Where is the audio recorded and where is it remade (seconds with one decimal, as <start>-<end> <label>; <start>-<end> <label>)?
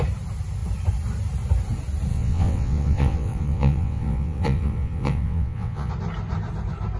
0.0-2.1 recorded; 2.1-5.9 remade; 5.9-7.0 recorded